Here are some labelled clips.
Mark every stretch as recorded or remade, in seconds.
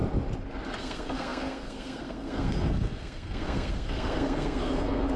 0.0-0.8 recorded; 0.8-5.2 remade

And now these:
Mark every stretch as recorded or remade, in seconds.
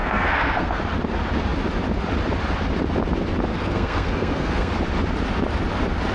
0.0-0.8 remade; 0.8-3.5 recorded; 3.5-4.7 remade; 4.7-6.1 recorded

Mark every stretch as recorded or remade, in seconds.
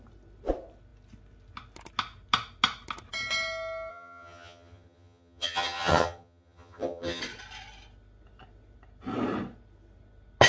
0.0-3.9 recorded; 3.9-7.2 remade; 7.2-10.5 recorded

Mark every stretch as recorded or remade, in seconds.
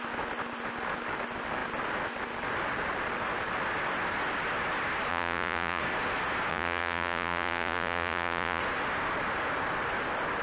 0.0-5.1 recorded; 5.1-5.8 remade; 5.8-6.5 recorded; 6.5-8.6 remade; 8.6-10.4 recorded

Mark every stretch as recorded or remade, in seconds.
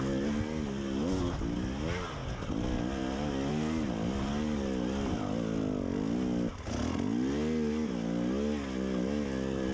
0.0-9.7 recorded